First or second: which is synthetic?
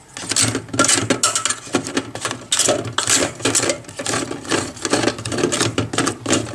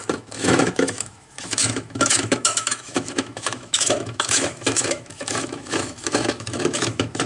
second